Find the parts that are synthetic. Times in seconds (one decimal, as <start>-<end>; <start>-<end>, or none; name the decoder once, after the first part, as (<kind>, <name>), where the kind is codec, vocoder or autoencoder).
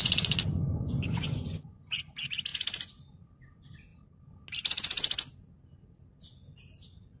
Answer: 0.0-2.1 (vocoder, Vocos)